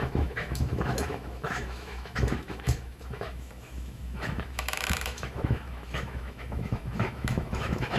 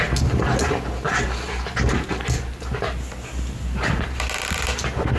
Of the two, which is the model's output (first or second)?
first